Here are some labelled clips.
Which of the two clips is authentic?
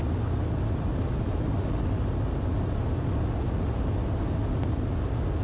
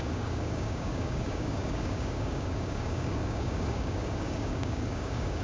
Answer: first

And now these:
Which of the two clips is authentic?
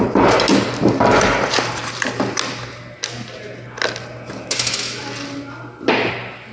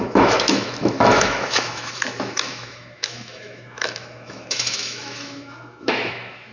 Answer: first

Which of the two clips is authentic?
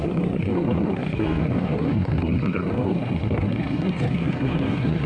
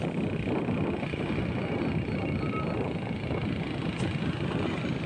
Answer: second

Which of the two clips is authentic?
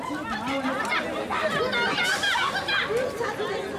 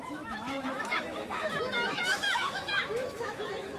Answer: first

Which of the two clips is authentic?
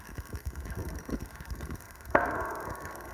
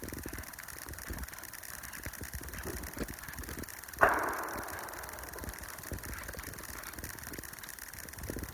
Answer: second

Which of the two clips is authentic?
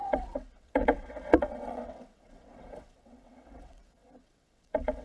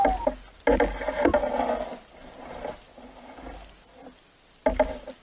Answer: second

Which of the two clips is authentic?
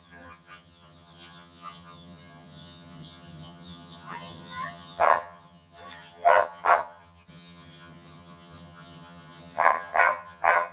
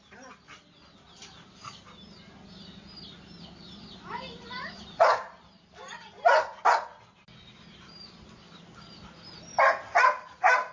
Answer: second